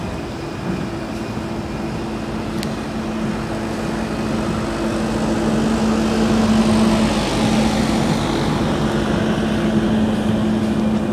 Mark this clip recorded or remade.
recorded